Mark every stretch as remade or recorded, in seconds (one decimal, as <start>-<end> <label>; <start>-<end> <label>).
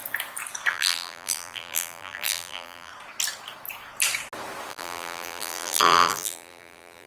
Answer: 0.0-0.7 recorded; 0.7-2.9 remade; 2.9-4.7 recorded; 4.7-7.1 remade